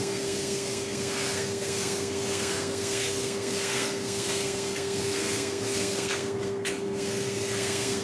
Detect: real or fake fake